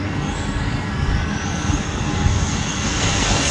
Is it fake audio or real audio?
fake